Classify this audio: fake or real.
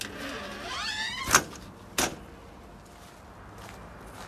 real